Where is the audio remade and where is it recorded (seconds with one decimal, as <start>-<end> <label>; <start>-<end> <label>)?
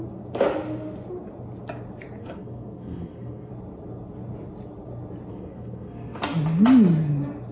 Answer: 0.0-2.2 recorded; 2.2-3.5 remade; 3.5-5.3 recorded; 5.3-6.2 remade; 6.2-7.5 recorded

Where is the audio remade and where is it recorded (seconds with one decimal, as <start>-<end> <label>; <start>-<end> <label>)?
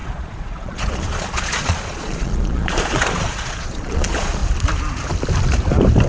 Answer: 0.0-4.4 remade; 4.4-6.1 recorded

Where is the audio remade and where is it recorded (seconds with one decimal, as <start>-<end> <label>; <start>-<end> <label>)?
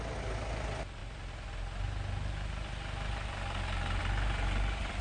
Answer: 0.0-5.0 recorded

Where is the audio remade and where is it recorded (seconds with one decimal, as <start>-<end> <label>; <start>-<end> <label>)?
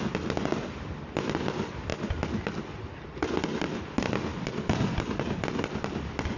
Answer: 0.0-6.4 recorded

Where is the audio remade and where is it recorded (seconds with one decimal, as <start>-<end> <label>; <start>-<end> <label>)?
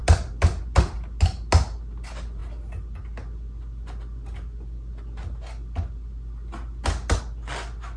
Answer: 0.0-8.0 recorded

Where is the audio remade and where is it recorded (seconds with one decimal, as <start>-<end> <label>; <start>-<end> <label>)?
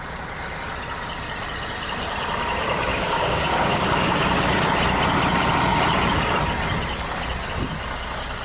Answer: 0.0-2.9 recorded; 2.9-4.1 remade; 4.1-8.4 recorded